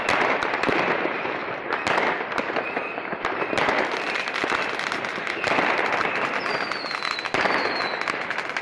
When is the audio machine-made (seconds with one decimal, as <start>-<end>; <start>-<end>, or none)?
none